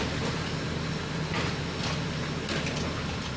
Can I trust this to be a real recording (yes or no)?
yes